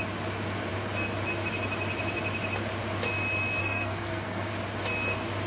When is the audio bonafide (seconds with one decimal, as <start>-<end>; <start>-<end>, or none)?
0.0-3.6; 4.5-5.5